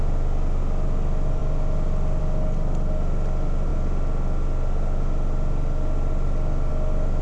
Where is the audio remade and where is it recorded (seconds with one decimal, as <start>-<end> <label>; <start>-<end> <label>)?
0.0-7.2 recorded